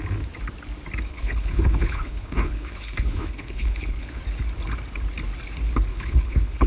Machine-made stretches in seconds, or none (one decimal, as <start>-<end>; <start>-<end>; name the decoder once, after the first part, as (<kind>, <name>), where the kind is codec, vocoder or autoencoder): 1.1-4.2 (codec, HILCodec); 5.9-6.7

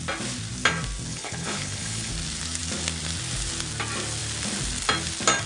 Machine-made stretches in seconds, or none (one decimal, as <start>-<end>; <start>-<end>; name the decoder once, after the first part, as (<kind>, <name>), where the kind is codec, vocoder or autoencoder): 1.1-2.1 (codec, HILCodec)

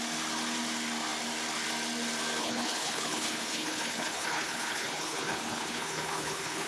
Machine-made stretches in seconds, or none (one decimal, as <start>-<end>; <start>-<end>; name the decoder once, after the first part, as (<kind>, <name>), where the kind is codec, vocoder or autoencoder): 2.4-6.7 (codec, HILCodec)

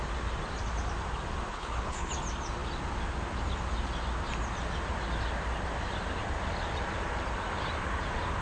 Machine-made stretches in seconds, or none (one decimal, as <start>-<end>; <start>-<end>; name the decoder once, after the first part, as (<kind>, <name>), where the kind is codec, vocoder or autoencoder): 1.5-2.1 (codec, HILCodec)

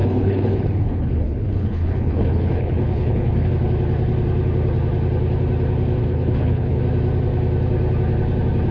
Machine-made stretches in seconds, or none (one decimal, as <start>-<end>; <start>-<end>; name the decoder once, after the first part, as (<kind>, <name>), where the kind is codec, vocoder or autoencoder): 0.0-3.5 (codec, HILCodec); 6.0-6.8

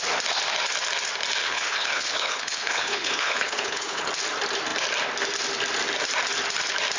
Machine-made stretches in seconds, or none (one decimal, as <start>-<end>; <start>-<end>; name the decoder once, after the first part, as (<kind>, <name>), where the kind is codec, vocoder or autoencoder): 1.4-4.1 (codec, HILCodec)

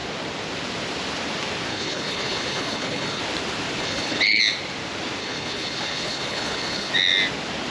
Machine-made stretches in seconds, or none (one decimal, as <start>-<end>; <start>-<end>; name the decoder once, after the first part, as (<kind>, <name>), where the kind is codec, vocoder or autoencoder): 1.7-3.2 (codec, HILCodec); 3.8-4.4; 5.2-6.9